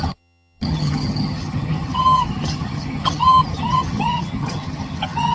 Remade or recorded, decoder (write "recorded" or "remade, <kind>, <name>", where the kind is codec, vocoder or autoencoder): remade, vocoder, HiFi-GAN